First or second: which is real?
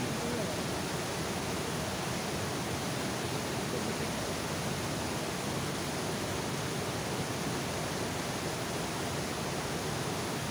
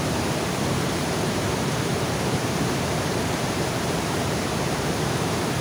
first